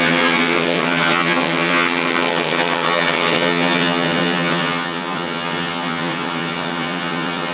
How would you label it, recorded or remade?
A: remade